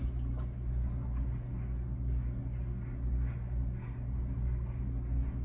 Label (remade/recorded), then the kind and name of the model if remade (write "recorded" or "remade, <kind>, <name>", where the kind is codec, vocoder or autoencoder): recorded